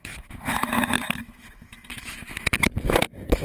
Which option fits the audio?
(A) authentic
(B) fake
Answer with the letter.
B